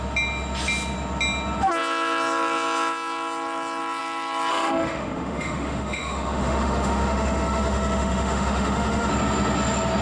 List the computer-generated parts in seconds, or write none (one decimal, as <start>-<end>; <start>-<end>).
4.5-9.1